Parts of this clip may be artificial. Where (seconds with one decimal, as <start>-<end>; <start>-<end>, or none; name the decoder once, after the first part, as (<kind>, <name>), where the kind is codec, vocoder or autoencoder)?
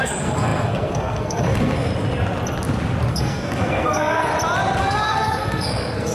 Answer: 0.0-1.9 (codec, SNAC); 3.1-4.3; 4.8-6.1